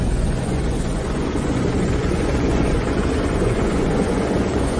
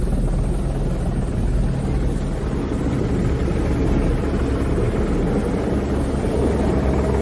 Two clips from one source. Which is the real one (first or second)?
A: second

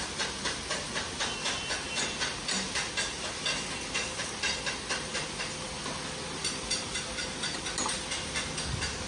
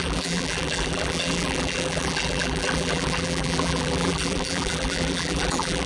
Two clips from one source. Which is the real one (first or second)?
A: first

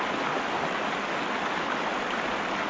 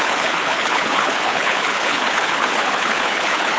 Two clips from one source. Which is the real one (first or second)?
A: first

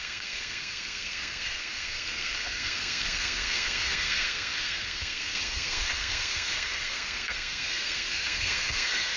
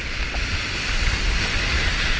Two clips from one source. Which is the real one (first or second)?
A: second